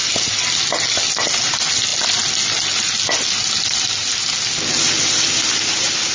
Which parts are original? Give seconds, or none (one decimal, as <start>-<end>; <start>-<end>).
0.0-6.1